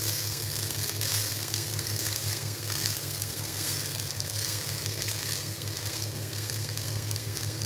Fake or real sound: fake